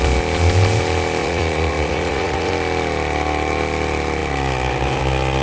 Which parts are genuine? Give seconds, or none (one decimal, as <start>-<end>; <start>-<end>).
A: 0.0-1.2; 2.5-5.4